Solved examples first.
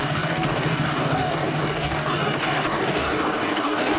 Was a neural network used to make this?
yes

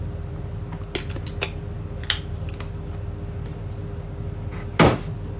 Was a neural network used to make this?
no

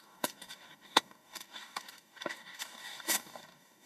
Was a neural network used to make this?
yes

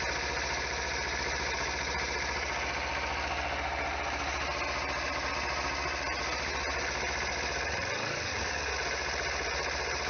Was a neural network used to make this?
no